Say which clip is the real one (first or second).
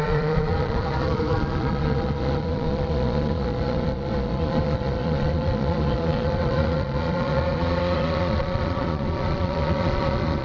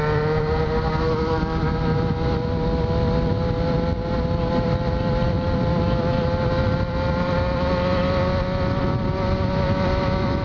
second